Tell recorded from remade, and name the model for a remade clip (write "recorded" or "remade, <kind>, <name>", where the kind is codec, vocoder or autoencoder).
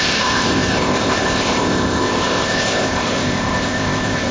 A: remade, codec, ZipCodec